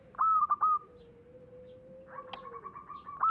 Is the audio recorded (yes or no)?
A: yes